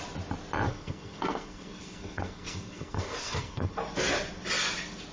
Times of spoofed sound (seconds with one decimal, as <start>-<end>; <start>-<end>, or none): 0.7-3.8